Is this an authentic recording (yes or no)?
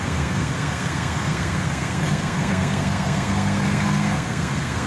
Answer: no